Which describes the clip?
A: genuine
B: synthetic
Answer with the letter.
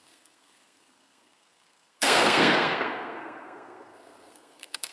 B